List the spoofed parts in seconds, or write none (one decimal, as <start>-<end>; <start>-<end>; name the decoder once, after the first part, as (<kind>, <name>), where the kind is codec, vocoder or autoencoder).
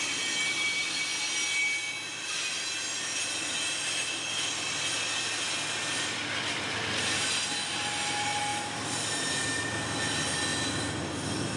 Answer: none